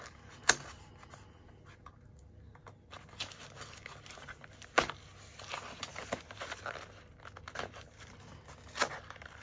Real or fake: real